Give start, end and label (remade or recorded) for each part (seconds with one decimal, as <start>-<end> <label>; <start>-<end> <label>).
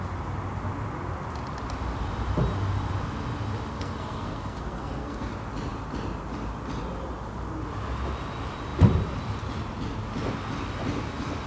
0.0-3.7 recorded; 3.7-5.3 remade; 5.3-11.5 recorded